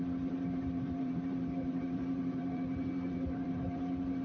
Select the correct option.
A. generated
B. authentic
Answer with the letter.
A